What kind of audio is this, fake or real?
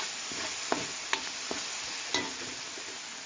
real